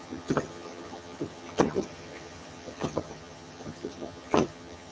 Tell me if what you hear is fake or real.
fake